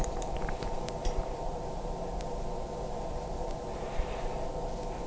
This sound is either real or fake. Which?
fake